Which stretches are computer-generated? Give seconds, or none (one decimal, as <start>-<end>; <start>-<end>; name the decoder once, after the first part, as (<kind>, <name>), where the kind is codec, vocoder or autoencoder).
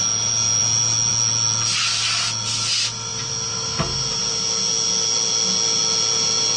none